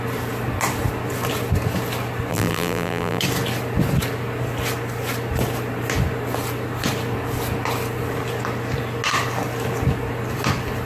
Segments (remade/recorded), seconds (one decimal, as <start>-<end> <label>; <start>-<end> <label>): 0.0-2.3 recorded; 2.3-3.2 remade; 3.2-10.9 recorded